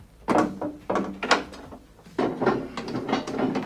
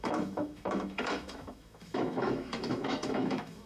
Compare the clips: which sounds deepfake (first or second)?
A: second